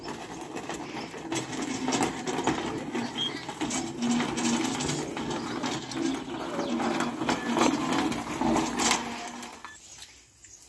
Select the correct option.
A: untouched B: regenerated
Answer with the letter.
A